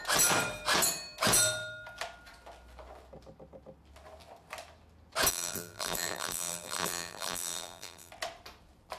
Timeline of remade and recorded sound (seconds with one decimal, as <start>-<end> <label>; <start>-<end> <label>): 0.0-5.3 recorded; 5.3-8.1 remade; 8.1-9.0 recorded